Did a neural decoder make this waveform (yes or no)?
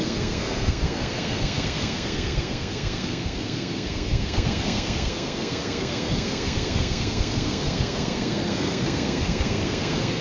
yes